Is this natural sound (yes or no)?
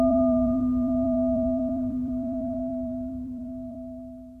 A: no